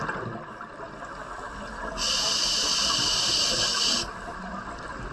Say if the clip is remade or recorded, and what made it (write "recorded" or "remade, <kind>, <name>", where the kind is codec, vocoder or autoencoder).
recorded